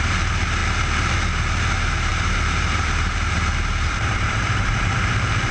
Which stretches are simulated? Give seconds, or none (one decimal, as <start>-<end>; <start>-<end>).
0.0-0.6; 1.7-5.5